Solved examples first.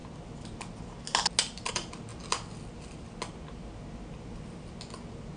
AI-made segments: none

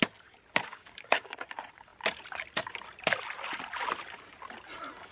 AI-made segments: 0.7-1.3

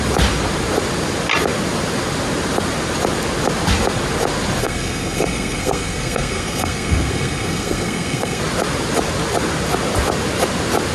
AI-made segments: 4.6-8.4

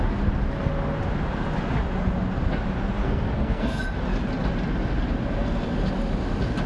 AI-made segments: 3.0-3.8

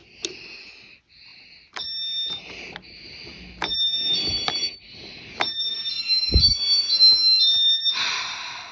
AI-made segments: none

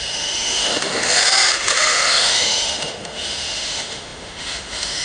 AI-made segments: 0.0-5.0

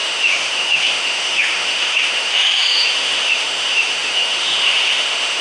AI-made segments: 0.0-5.4